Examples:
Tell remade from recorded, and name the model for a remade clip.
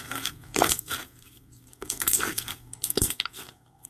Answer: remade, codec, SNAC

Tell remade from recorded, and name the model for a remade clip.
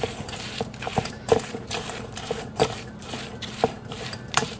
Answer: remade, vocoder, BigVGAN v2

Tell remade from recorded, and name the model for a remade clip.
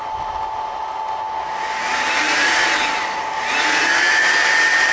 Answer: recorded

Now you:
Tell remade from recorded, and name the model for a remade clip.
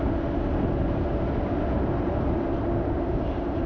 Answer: recorded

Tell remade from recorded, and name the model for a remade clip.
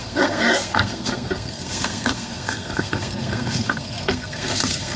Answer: remade, codec, SNAC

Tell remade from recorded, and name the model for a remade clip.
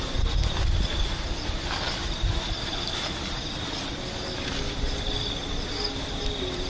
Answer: recorded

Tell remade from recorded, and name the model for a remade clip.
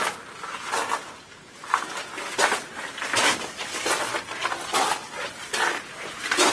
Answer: recorded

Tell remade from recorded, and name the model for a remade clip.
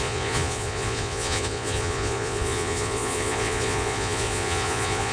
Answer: remade, vocoder, Vocos